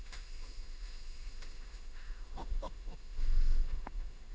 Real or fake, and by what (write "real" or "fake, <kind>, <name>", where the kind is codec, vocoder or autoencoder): fake, autoencoder, DAC-VAE